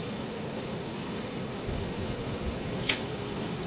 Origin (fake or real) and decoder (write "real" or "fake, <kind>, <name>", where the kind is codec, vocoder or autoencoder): fake, autoencoder, DAC-VAE